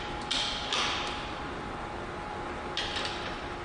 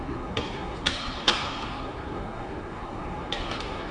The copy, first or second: second